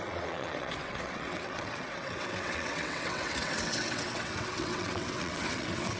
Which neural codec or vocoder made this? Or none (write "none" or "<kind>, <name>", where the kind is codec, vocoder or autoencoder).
vocoder, WaveNeXt